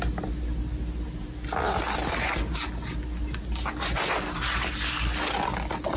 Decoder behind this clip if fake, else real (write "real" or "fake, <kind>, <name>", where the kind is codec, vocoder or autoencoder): real